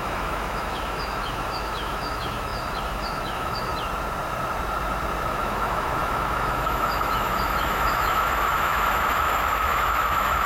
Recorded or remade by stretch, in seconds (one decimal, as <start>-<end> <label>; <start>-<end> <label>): 0.0-3.7 remade; 3.7-5.3 recorded; 5.3-10.5 remade

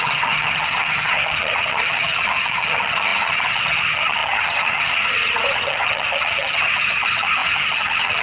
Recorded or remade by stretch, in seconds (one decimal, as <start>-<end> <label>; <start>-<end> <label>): 0.0-8.2 remade

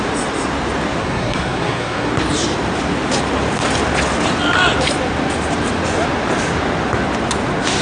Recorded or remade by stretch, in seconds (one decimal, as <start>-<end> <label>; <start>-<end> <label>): 0.0-1.0 recorded; 1.0-2.1 remade; 2.1-7.8 recorded